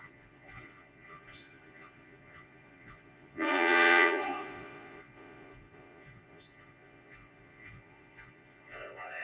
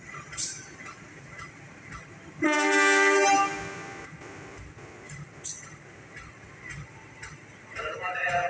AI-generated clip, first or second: first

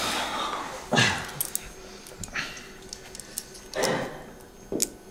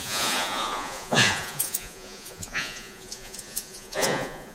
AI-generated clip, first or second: second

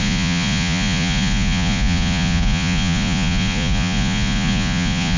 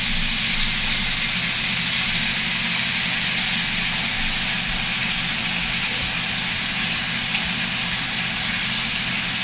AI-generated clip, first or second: first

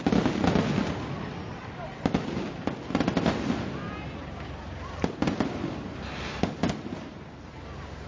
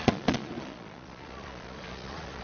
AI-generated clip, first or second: second